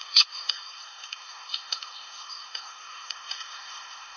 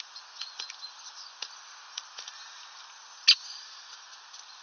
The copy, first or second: first